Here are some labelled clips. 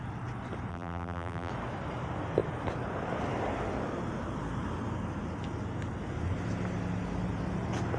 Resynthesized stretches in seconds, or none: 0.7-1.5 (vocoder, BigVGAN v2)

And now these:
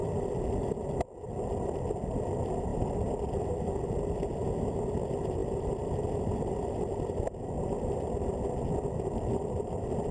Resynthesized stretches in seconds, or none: 2.7-3.3 (vocoder, BigVGAN v2)